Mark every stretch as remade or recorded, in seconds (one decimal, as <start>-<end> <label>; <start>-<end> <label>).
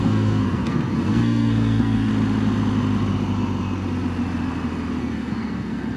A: 0.0-2.1 remade; 2.1-5.0 recorded; 5.0-6.0 remade